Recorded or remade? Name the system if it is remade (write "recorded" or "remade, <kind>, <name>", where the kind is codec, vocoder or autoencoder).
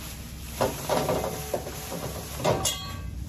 recorded